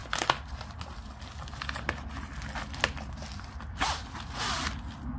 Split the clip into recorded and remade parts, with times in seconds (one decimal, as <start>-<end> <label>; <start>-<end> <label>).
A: 0.0-5.2 recorded